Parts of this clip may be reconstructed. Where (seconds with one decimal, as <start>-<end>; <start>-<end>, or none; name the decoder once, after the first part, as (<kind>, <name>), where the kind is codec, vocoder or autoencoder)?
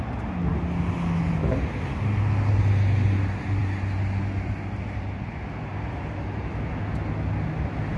none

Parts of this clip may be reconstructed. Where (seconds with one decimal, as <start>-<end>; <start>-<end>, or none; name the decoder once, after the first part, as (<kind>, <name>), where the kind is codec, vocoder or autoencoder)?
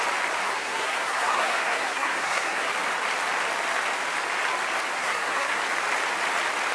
0.4-2.7 (codec, SNAC); 4.9-5.6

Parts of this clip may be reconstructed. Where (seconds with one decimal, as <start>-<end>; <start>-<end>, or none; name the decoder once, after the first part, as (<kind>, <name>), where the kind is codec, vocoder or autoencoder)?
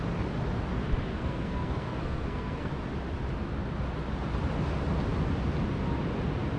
1.1-2.7 (codec, SNAC)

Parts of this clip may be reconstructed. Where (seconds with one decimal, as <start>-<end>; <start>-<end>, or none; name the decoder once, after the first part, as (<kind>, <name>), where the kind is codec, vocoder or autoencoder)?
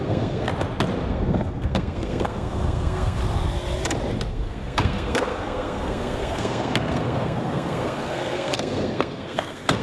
0.0-0.5 (codec, SNAC); 1.1-3.2; 4.3-9.8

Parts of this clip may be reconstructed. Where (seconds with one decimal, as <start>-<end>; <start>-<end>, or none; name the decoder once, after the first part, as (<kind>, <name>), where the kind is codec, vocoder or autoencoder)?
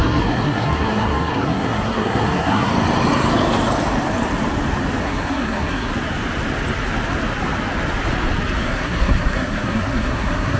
0.0-2.7 (codec, SNAC); 5.0-5.9; 8.6-10.6